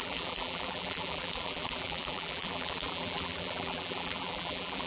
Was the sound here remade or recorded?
remade